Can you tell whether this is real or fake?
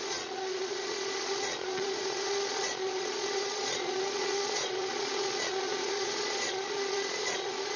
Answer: fake